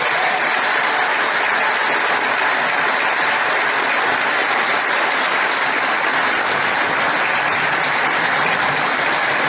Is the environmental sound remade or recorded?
recorded